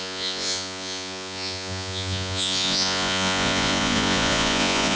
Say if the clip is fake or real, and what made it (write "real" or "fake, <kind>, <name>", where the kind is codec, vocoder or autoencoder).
fake, vocoder, Vocos